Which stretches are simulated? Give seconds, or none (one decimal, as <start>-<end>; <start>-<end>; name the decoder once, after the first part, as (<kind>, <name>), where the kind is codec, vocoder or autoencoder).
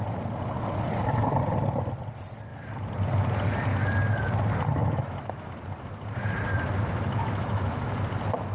4.8-5.5 (autoencoder, DAC-VAE); 6.8-8.0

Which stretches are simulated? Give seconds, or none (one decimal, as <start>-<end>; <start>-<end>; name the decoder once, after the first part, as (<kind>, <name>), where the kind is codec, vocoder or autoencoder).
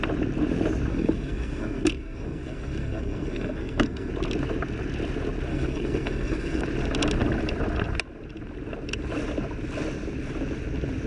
0.9-4.1 (codec, SNAC); 5.5-6.6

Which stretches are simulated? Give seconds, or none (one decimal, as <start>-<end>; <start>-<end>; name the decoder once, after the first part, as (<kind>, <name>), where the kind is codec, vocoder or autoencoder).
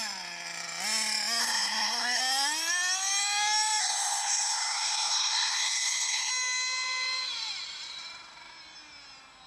1.4-2.2 (codec, SNAC); 3.8-6.3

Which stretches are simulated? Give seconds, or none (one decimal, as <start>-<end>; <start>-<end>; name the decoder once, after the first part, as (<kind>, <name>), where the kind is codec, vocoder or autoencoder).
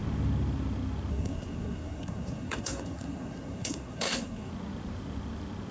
1.1-4.5 (codec, SNAC)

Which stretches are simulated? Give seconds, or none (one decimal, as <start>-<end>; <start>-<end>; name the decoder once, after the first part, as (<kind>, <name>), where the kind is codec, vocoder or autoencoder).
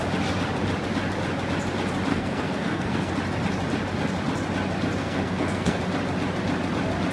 2.1-3.1 (codec, SNAC); 5.0-5.8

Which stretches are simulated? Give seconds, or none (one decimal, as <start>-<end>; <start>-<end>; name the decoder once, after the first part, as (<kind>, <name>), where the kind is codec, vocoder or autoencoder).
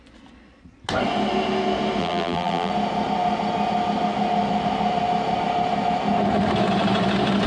2.0-2.7 (vocoder, BigVGAN v2)